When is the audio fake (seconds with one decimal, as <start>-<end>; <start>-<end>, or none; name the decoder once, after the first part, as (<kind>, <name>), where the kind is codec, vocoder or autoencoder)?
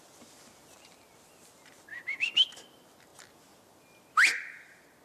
none